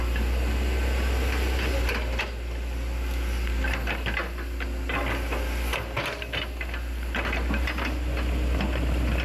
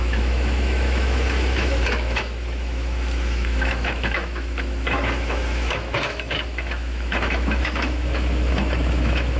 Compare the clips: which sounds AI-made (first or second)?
second